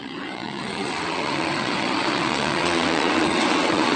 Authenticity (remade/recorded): remade